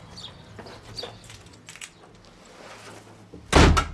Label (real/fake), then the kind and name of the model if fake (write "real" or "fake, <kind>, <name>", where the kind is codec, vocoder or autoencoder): real